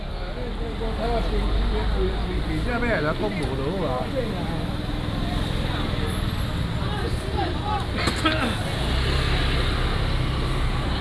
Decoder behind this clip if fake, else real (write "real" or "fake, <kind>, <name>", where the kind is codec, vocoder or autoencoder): real